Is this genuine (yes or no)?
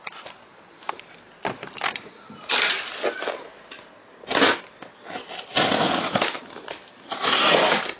yes